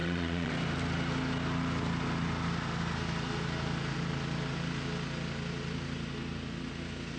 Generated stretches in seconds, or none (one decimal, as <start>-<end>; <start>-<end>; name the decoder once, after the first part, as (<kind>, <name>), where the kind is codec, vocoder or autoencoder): 0.0-0.5 (vocoder, Vocos)